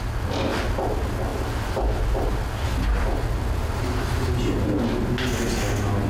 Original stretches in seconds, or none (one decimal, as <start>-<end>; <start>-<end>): 0.0-6.1

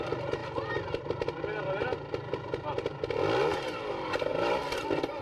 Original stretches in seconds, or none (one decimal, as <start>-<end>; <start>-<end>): 0.0-5.2

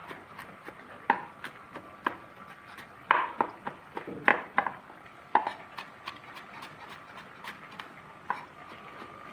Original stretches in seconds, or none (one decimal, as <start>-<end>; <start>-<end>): 0.6-4.3; 8.8-9.3

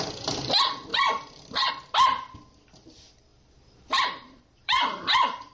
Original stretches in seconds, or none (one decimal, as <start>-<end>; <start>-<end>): 0.0-0.9; 1.7-3.3; 5.0-5.5

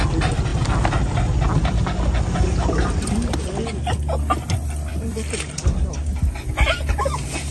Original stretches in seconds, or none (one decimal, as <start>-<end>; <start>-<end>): 0.0-4.9; 5.9-7.5

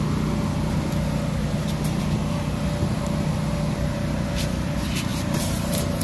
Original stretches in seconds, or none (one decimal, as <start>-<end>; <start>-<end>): 0.0-5.1

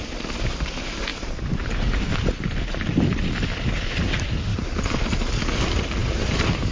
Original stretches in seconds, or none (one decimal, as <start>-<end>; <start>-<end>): 0.0-1.1; 2.1-6.0

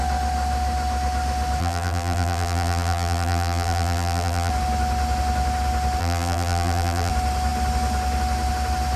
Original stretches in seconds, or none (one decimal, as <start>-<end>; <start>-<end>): 0.0-1.6; 4.5-6.0; 7.1-9.0